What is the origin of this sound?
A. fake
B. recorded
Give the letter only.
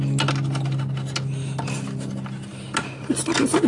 B